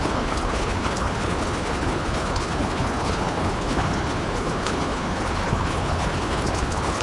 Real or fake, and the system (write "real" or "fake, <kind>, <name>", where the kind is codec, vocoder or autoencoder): fake, codec, HILCodec